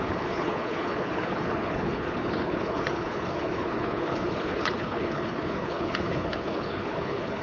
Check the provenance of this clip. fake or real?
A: fake